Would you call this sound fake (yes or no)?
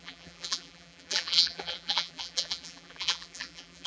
yes